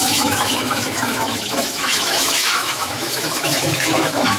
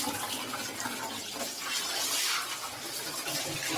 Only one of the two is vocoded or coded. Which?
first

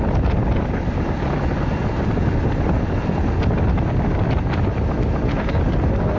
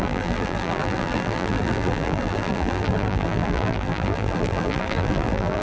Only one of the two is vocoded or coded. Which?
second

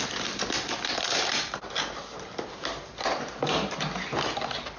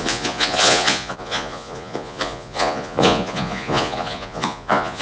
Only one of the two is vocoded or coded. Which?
second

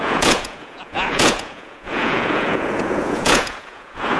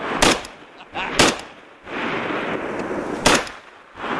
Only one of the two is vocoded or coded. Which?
first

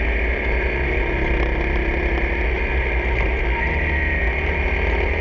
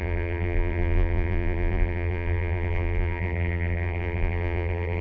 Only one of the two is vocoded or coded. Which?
second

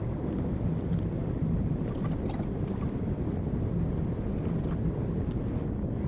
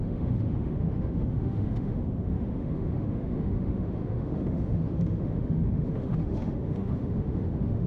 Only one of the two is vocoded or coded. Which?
second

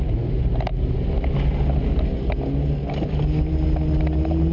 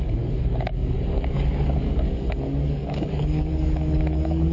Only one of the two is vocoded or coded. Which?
second